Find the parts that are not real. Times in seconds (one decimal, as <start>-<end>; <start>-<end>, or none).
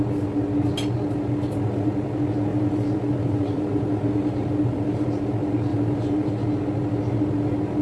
2.5-5.2; 5.7-6.3